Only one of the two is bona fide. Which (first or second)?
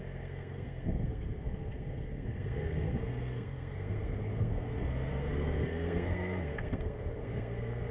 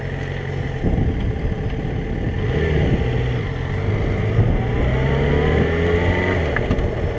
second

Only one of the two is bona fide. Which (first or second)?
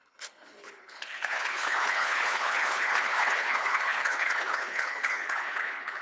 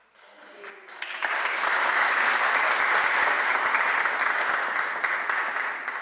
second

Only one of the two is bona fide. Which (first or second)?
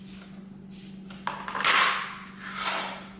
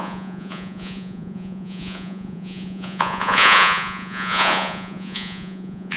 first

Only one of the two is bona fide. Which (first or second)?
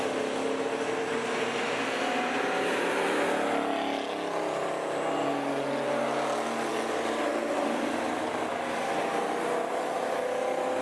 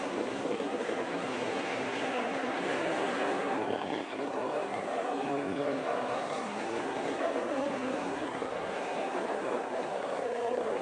first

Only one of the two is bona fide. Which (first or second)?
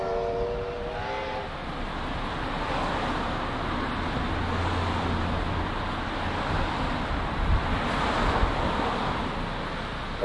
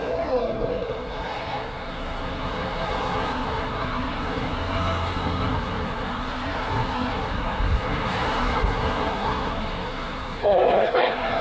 first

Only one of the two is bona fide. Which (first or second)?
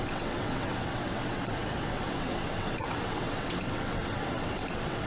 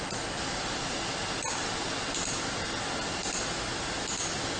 second